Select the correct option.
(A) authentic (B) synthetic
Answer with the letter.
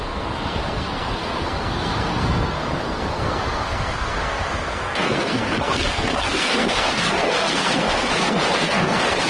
B